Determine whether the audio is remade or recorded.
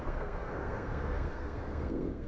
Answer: remade